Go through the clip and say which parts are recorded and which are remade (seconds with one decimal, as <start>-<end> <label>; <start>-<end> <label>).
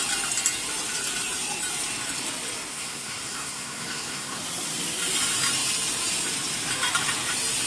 0.0-2.7 recorded; 2.7-4.4 remade; 4.4-7.7 recorded